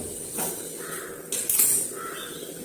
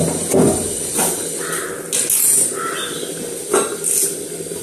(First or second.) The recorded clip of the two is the second